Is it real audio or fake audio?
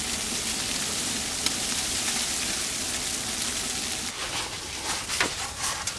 real